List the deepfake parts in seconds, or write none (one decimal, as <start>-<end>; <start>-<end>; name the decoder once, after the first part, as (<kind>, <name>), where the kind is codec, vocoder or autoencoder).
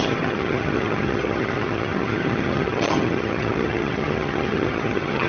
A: 0.0-5.3 (vocoder, HiFi-GAN)